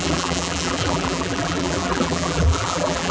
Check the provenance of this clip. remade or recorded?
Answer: remade